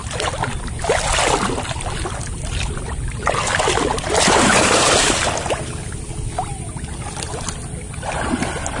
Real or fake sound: real